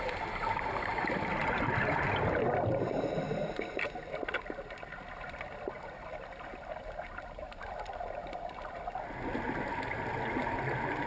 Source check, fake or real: real